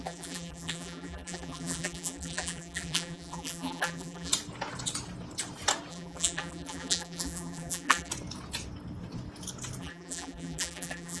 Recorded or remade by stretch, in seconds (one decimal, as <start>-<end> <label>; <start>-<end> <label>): 0.0-4.3 remade; 4.3-5.9 recorded; 5.9-8.1 remade; 8.1-9.8 recorded; 9.8-11.2 remade